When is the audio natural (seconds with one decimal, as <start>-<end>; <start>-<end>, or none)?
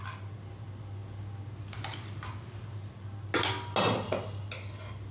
0.0-5.1